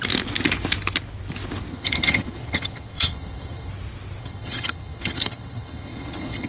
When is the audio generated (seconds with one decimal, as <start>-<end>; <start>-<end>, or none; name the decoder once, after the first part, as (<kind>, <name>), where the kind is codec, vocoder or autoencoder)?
1.7-3.7 (vocoder, HiFi-GAN); 4.2-6.5